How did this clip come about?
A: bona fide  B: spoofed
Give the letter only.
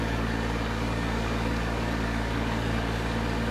B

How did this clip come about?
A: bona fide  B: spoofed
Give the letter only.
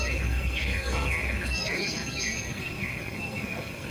B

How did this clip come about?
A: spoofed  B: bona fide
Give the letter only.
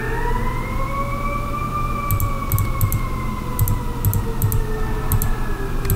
B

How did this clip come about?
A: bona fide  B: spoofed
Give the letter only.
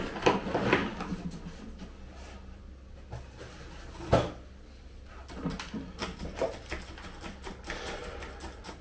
A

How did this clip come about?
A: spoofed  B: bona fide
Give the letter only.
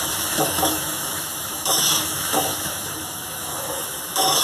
A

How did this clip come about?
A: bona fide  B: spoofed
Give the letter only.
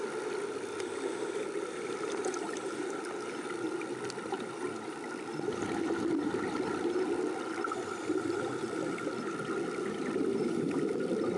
A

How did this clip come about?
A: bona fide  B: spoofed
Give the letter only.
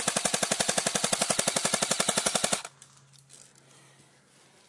A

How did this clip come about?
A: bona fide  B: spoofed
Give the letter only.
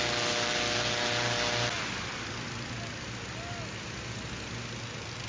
A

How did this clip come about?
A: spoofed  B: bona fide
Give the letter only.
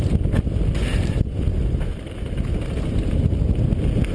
B